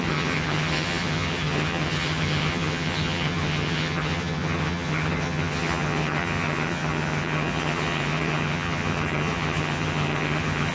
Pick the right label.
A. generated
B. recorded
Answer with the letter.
A